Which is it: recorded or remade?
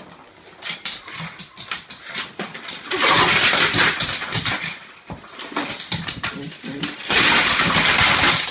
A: recorded